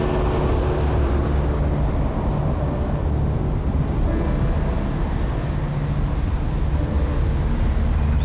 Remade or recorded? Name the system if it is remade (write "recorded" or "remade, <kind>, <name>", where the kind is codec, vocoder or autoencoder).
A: recorded